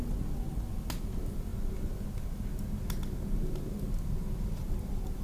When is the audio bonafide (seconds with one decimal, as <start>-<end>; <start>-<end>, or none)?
0.0-5.2